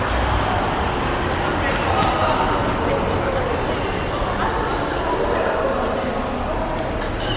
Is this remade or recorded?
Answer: recorded